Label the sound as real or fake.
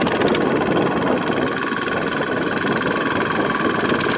real